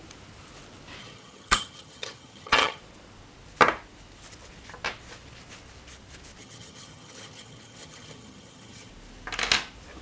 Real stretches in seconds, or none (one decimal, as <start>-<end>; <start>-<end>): 0.0-1.0; 2.8-6.4; 8.9-10.0